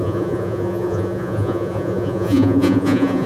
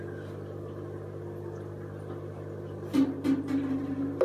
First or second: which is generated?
first